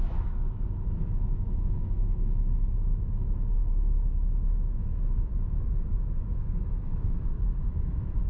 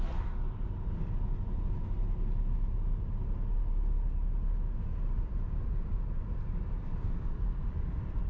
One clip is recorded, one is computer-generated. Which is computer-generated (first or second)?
first